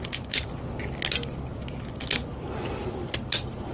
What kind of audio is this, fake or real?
real